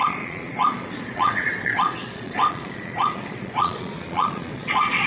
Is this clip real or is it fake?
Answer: fake